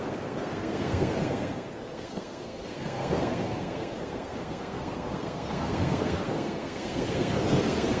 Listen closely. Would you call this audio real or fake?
fake